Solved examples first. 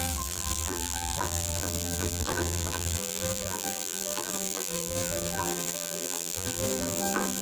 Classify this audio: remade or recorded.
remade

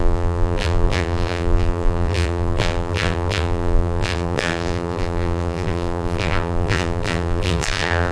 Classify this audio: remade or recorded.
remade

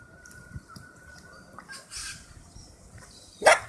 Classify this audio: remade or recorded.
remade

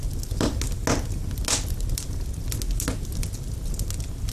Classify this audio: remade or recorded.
recorded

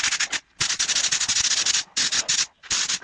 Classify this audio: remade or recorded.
recorded